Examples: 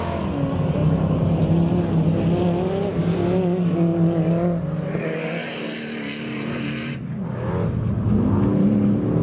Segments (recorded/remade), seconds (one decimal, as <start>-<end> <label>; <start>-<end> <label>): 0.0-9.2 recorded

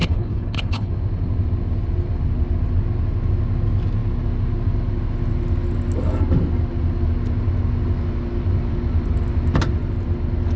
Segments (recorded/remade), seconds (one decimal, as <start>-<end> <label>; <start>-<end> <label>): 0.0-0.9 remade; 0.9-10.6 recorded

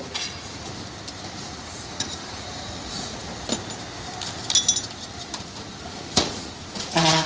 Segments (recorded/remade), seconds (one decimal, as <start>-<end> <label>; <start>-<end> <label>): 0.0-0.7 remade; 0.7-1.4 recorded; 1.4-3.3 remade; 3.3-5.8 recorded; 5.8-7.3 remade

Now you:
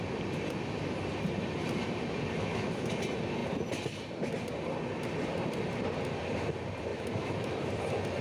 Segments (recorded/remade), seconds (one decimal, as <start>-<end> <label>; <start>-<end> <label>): 0.0-2.5 recorded; 2.5-3.0 remade; 3.0-6.9 recorded; 6.9-7.5 remade; 7.5-8.2 recorded

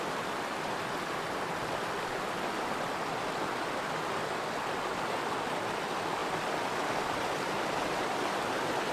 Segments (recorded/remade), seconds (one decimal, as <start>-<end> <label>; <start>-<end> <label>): 0.0-8.9 recorded